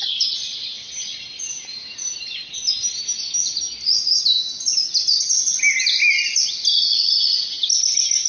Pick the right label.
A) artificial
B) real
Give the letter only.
B